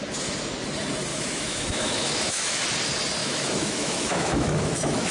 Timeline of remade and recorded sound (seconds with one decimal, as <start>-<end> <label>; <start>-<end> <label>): 0.0-1.1 recorded; 1.1-2.6 remade; 2.6-3.2 recorded; 3.2-5.1 remade

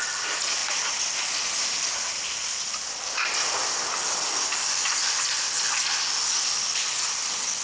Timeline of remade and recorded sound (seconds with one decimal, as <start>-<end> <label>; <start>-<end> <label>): 0.0-7.6 recorded

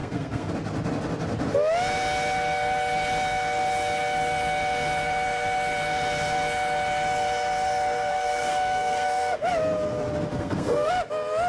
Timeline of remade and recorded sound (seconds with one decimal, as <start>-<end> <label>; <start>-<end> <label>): 0.0-0.5 remade; 0.5-8.1 recorded; 8.1-9.5 remade; 9.5-10.3 recorded; 10.3-10.9 remade; 10.9-11.5 recorded

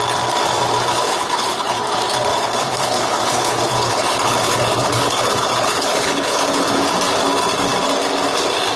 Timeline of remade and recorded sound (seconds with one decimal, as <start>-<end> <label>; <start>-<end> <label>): 0.0-1.0 recorded; 1.0-1.8 remade; 1.8-2.3 recorded; 2.3-6.8 remade; 6.8-8.8 recorded

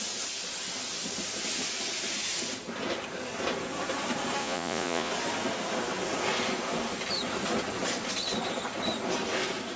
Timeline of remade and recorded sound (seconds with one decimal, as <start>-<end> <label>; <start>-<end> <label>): 0.0-4.4 recorded; 4.4-5.1 remade; 5.1-9.8 recorded

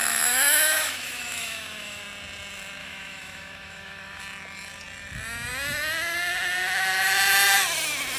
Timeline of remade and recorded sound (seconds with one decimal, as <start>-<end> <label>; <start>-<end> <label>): 0.0-2.0 remade; 2.0-2.8 recorded; 2.8-4.2 remade; 4.2-8.2 recorded

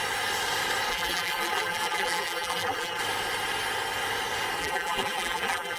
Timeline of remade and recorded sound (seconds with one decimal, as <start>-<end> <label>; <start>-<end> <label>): 0.0-0.9 recorded; 0.9-3.0 remade; 3.0-4.6 recorded; 4.6-5.8 remade